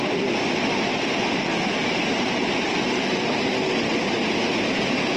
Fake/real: real